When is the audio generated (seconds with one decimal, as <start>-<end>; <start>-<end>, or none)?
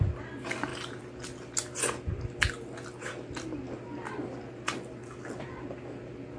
none